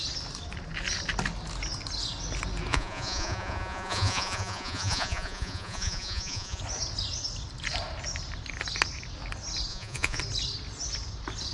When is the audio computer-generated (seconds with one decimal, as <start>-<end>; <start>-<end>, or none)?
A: 2.7-6.6; 9.7-10.2